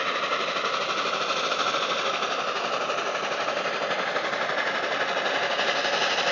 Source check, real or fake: real